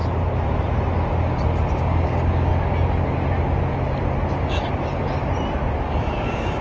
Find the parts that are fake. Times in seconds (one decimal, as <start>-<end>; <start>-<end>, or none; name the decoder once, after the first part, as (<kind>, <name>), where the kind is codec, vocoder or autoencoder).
1.8-2.5 (codec, DAC); 5.8-6.6